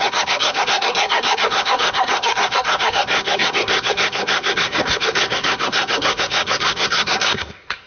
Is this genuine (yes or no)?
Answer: no